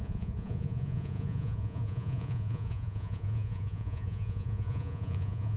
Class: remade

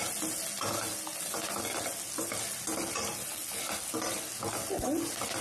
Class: recorded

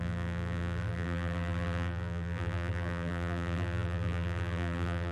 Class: remade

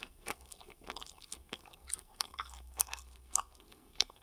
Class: remade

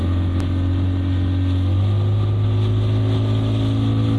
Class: recorded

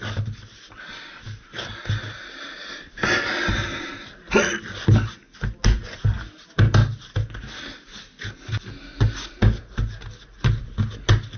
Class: recorded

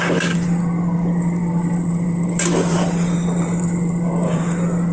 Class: remade